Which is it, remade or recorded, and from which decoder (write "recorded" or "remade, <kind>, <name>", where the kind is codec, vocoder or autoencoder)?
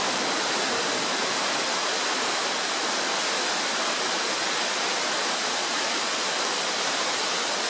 remade, vocoder, BigVGAN v2